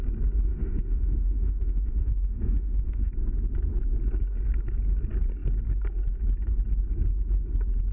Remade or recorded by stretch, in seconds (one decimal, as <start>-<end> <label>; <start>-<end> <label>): 0.0-0.5 recorded; 0.5-3.1 remade; 3.1-7.9 recorded